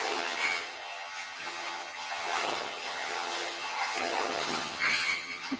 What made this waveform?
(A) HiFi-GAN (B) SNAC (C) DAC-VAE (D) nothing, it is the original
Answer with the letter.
A